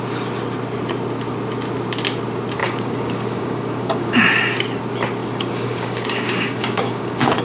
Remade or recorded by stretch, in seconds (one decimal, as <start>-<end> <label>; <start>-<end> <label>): 0.0-2.6 recorded; 2.6-4.2 remade; 4.2-5.2 recorded; 5.2-7.4 remade